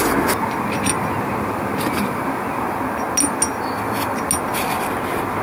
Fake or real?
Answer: real